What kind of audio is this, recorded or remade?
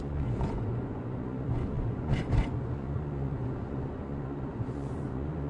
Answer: remade